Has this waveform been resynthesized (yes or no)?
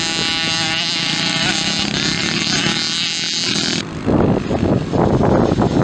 no